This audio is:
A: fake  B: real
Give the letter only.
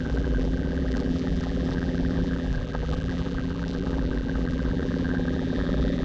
A